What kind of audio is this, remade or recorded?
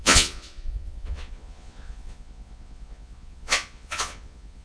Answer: remade